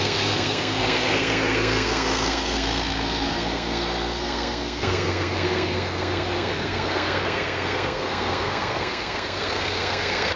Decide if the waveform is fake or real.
fake